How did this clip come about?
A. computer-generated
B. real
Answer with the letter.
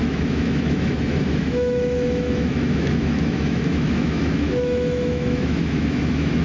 A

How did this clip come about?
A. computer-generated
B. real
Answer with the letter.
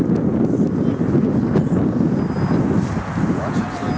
B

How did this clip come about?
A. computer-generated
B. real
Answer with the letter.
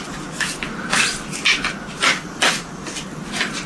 B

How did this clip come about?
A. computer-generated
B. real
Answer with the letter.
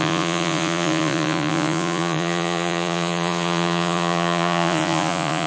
A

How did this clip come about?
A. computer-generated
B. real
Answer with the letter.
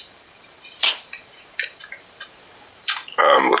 A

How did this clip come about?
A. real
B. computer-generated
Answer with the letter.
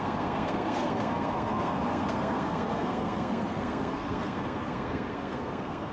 B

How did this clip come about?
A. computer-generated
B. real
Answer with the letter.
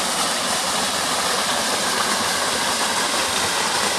B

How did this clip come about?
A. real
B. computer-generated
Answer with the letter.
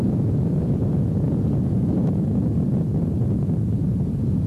B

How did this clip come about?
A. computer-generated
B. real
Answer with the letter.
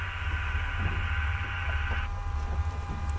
B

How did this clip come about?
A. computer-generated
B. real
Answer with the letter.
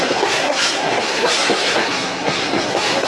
A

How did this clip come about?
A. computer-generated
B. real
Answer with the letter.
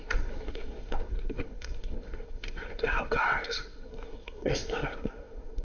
A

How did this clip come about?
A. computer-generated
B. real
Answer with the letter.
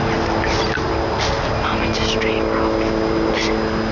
B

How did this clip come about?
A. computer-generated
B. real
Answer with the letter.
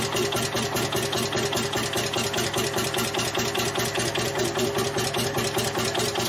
B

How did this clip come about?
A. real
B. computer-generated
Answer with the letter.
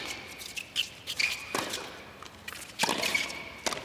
A